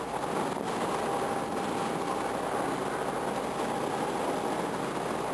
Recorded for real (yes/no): yes